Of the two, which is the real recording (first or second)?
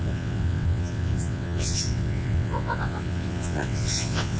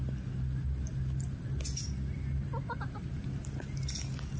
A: second